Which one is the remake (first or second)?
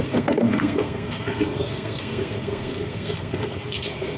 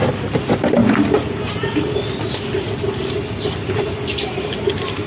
first